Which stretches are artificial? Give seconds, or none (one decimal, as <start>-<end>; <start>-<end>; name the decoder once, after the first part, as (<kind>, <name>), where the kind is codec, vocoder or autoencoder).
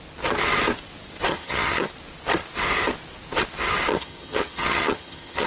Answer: 1.3-1.9 (vocoder, HiFi-GAN); 3.9-5.5